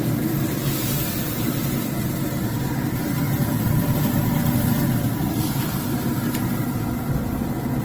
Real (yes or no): yes